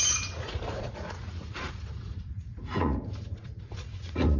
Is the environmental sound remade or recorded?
remade